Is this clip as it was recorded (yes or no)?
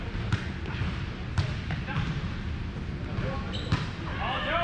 yes